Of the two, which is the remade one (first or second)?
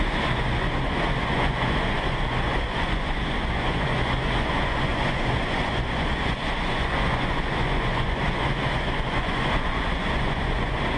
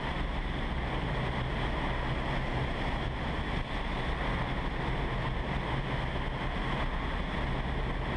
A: first